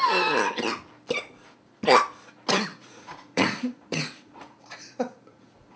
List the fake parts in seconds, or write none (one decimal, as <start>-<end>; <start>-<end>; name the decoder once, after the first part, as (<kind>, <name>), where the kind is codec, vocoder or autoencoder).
2.7-5.8 (vocoder, Vocos)